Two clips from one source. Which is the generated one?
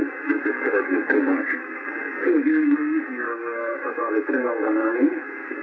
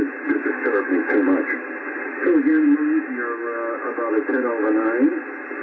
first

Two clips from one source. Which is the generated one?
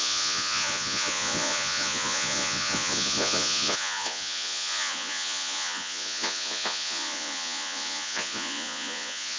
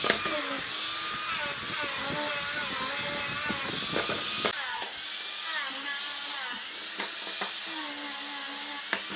first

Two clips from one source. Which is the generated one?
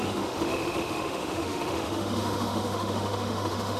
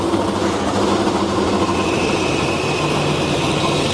first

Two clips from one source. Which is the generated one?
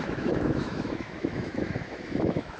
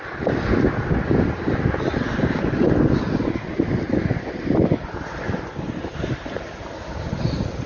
first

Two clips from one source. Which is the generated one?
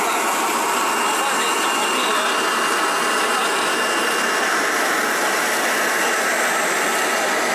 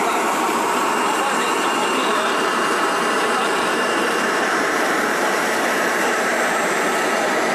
second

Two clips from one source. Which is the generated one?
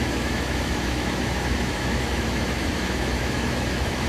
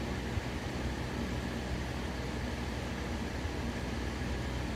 first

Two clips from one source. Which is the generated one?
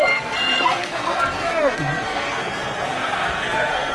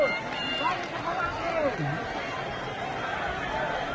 first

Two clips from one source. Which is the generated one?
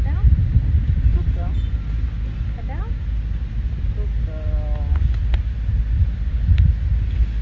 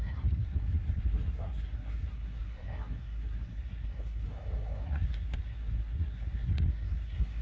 second